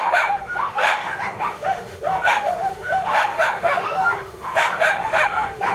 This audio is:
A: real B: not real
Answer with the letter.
B